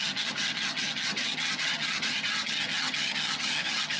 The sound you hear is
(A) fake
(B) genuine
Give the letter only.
A